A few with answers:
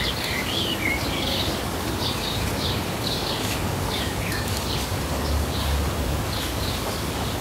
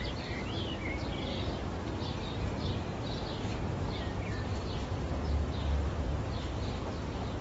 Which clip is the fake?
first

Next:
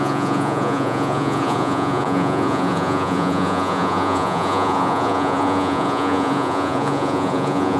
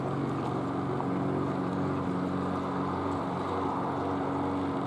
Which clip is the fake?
first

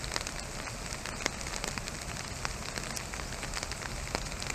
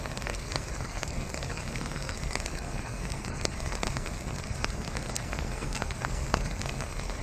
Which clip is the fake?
second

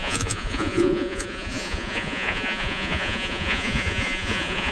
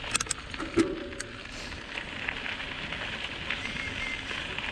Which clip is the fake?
first